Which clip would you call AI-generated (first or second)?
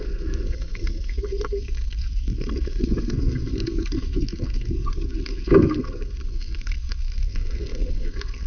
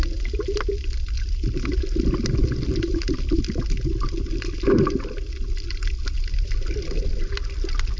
first